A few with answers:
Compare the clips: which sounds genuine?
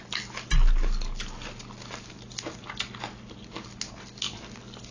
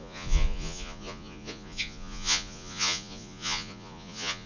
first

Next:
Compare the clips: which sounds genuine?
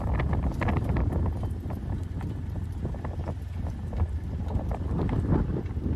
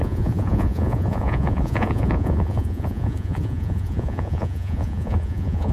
first